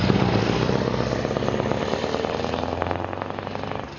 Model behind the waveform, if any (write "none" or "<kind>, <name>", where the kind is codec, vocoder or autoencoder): none